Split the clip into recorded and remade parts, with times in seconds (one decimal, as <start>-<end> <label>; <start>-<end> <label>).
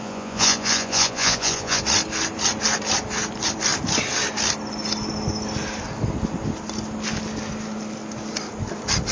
0.0-1.8 remade; 1.8-9.1 recorded